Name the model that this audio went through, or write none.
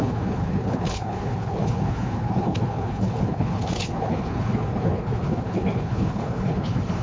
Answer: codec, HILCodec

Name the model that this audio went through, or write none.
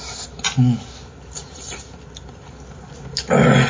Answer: none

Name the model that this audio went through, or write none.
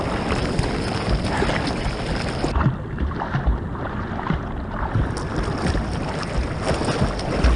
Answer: none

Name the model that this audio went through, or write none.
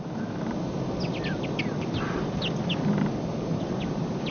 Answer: none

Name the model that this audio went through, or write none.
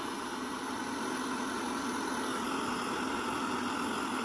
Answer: none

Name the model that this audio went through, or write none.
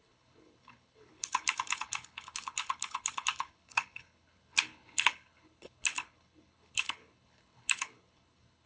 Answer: codec, HILCodec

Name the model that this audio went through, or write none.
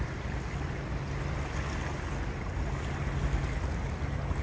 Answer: none